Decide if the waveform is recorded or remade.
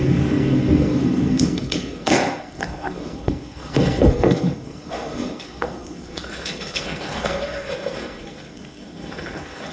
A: remade